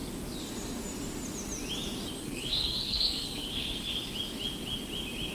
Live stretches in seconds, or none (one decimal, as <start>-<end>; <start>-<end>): 0.0-2.2; 3.9-5.3